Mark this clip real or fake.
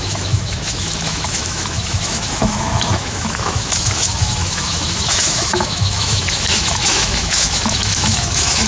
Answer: fake